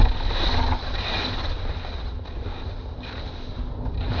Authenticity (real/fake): real